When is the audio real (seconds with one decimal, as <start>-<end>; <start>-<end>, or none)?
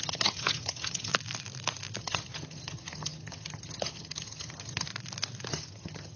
1.1-2.0; 4.9-5.5